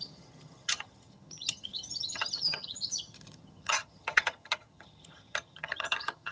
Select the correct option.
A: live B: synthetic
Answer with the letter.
B